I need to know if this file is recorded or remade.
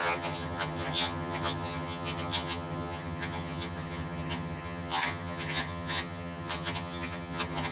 remade